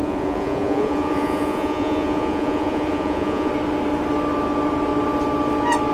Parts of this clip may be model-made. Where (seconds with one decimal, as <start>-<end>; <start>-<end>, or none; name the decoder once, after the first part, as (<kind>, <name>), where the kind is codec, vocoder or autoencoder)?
0.0-3.5 (vocoder, Vocos)